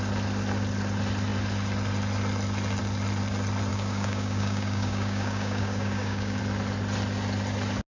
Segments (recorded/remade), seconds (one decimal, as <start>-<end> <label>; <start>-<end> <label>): 0.0-3.7 recorded; 3.7-6.4 remade; 6.4-7.9 recorded